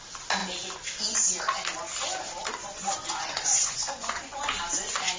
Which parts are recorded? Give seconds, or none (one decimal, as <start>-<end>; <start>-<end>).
0.0-2.6; 4.5-5.2